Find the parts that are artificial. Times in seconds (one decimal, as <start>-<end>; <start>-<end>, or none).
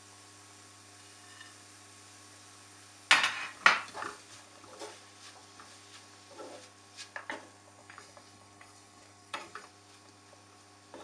7.8-9.7